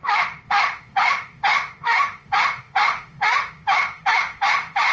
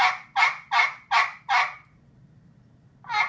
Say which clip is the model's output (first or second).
first